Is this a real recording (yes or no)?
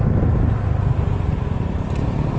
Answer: yes